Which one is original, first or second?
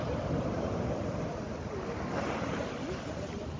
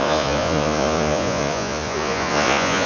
first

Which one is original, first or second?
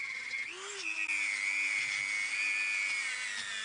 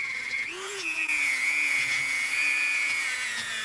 first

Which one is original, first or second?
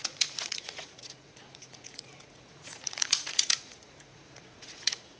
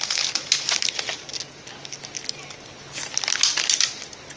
second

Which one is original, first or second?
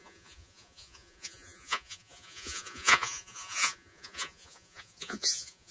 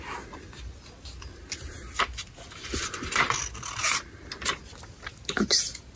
second